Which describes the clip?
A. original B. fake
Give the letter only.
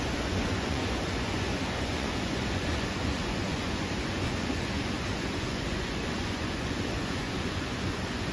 B